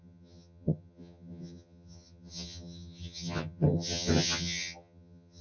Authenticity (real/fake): fake